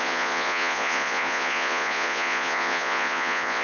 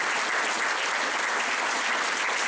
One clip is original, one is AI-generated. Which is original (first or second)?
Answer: second